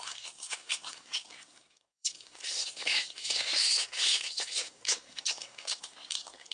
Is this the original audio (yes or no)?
no